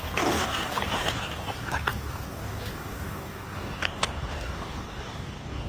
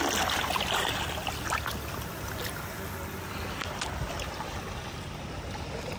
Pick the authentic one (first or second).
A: second